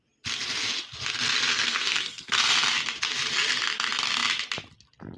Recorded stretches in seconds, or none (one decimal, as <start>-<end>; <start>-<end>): 0.0-1.5; 2.4-5.2